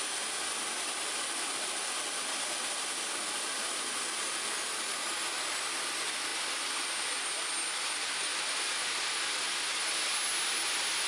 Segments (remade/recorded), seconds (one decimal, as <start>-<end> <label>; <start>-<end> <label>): 0.0-11.1 recorded